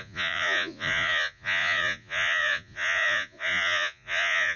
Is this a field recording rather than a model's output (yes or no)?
no